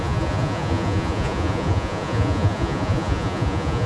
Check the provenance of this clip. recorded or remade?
remade